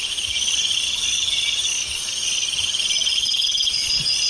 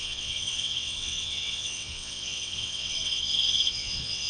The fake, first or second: second